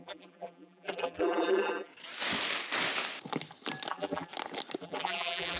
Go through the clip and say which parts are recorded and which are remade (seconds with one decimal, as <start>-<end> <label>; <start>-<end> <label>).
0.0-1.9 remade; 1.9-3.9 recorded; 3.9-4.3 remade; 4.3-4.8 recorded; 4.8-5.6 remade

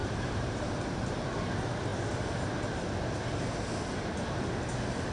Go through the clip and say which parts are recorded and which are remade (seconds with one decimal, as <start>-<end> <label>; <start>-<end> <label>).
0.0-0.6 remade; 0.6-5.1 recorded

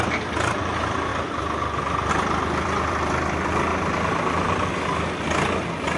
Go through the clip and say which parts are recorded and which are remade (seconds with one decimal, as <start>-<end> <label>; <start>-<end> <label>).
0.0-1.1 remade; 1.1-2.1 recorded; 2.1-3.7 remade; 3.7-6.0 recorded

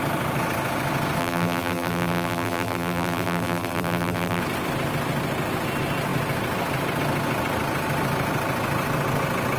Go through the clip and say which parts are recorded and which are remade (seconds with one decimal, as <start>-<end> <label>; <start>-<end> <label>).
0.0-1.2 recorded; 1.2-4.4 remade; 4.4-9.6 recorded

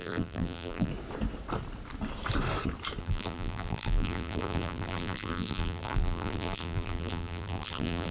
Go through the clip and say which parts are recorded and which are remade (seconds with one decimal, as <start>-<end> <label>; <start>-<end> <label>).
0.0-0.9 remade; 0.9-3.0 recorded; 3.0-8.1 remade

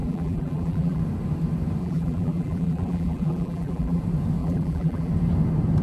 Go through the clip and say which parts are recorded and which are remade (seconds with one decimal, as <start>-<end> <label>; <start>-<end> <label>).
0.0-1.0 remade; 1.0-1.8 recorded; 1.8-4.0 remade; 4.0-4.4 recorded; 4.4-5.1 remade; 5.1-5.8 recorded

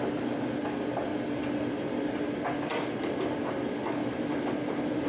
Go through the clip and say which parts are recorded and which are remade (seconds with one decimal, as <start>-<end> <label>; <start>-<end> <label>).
0.0-4.0 recorded; 4.0-5.1 remade